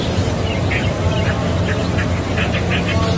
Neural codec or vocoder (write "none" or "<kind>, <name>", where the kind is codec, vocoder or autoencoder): none